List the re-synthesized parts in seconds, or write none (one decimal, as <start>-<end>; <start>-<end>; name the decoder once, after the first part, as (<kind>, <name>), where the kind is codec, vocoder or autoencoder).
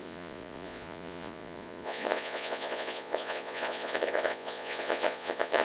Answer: 0.0-5.6 (vocoder, Vocos)